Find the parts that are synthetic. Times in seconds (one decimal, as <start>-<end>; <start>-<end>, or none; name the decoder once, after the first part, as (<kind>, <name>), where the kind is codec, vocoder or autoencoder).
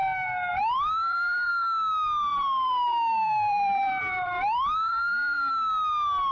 0.5-1.5 (vocoder, BigVGAN v2); 2.3-5.5